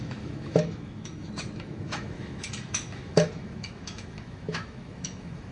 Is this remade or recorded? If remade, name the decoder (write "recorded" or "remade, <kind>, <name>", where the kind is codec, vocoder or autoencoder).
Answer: remade, autoencoder, DAC-VAE